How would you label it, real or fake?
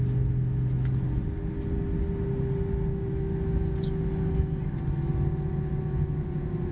real